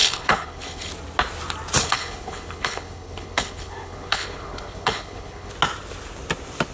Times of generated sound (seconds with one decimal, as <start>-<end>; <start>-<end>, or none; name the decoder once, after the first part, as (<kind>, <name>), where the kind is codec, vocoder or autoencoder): 0.0-0.9 (codec, HILCodec); 1.8-5.5